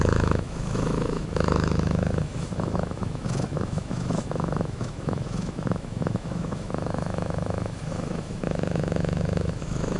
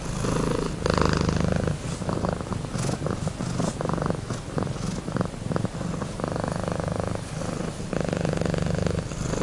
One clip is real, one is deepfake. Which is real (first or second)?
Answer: second